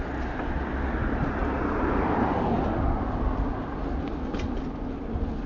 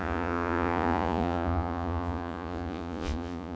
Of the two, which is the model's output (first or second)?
second